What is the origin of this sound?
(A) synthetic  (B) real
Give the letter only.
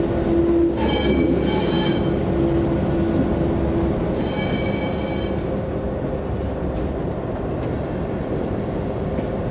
B